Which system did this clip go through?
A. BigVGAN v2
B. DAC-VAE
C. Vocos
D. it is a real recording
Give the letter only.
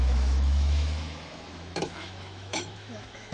B